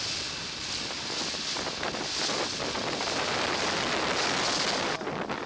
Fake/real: real